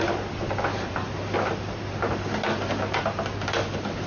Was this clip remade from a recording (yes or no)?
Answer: no